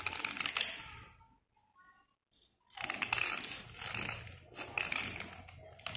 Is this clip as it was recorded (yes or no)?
yes